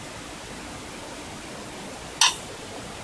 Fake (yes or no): no